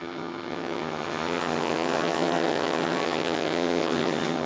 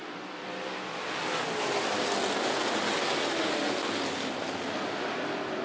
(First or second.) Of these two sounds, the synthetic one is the first